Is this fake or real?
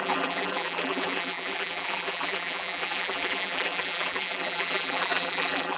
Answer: fake